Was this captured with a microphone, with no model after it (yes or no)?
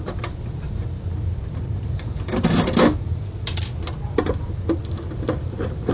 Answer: yes